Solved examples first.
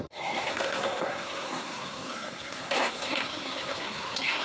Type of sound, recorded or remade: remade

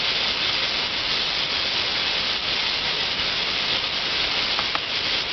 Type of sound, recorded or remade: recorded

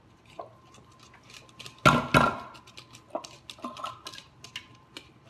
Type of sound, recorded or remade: recorded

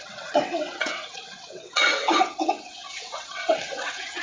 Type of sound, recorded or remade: remade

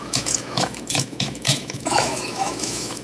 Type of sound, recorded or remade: remade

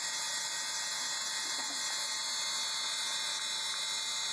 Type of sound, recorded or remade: recorded